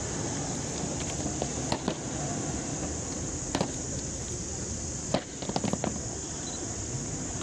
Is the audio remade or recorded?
recorded